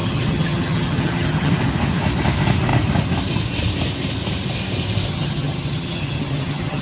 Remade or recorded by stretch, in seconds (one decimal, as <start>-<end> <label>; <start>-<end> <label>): 0.0-1.5 remade; 1.5-5.1 recorded; 5.1-6.8 remade